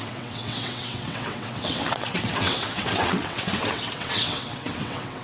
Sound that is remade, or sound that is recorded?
remade